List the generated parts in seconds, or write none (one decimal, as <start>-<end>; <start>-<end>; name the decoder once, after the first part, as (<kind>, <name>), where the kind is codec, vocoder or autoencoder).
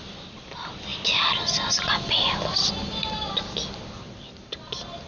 none